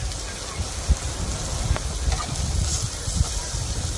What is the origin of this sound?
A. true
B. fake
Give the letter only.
A